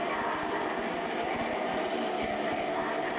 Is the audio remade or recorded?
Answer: recorded